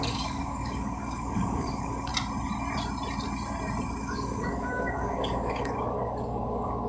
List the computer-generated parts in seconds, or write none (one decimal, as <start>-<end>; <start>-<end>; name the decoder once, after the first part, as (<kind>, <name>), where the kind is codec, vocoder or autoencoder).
0.0-2.1 (codec, DAC); 4.0-6.9